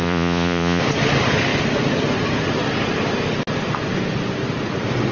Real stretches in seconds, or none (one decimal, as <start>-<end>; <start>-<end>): 0.8-5.1